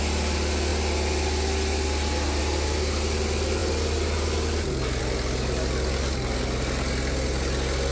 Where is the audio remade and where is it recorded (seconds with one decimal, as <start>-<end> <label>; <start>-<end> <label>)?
0.0-7.9 recorded